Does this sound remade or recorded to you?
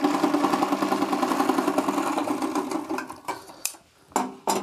recorded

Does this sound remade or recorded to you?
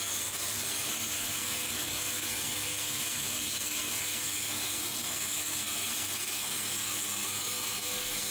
remade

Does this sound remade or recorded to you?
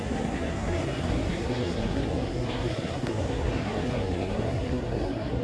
remade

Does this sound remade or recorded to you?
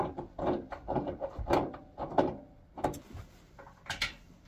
recorded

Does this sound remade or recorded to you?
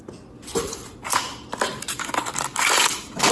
recorded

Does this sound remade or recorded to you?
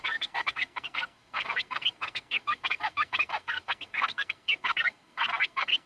remade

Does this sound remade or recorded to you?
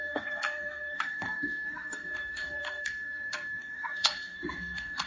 remade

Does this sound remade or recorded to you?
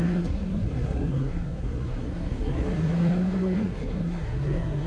remade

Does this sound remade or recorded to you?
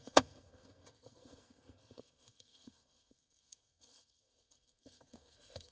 remade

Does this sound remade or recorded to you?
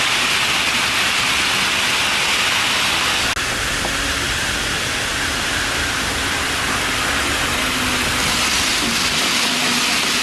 recorded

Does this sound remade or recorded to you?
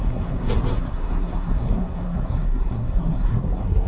remade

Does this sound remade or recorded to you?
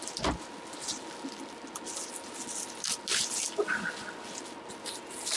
recorded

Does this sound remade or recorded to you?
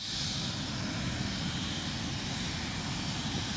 recorded